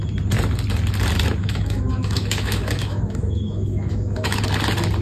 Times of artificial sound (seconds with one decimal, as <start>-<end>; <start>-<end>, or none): 1.4-4.4